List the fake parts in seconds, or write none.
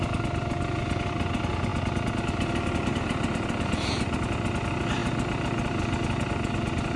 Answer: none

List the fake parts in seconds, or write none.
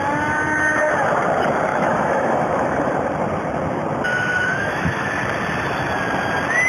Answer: 1.7-2.9 (autoencoder, DAC-VAE); 4.1-5.1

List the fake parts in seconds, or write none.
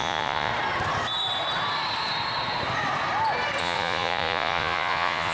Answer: 0.0-0.5 (vocoder, Vocos); 3.6-5.3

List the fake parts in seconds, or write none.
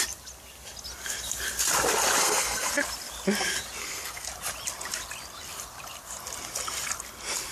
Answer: 2.2-2.7 (codec, SNAC); 3.8-4.3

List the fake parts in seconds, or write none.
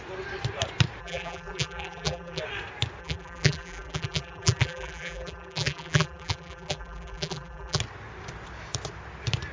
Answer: 1.0-2.4 (vocoder, BigVGAN v2); 3.0-7.8